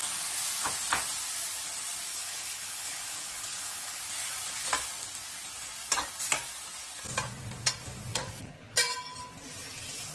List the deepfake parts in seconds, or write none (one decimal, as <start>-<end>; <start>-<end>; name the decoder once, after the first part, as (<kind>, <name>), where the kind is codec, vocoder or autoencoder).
2.1-4.0 (codec, HILCodec); 8.2-8.7